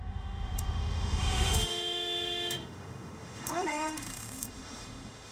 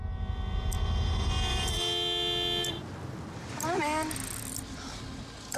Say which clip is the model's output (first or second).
first